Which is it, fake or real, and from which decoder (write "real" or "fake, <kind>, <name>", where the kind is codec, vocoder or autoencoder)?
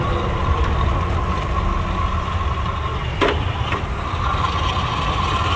real